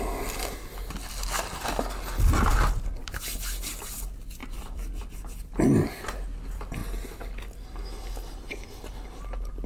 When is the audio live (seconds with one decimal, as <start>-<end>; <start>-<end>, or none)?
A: 0.0-4.4; 5.0-9.7